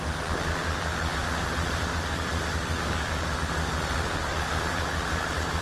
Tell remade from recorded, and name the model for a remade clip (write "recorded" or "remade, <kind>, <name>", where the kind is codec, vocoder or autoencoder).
remade, vocoder, BigVGAN v2